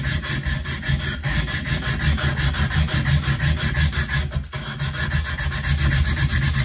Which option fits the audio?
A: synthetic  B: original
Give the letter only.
B